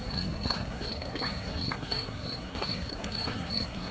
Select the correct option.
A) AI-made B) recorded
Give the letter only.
A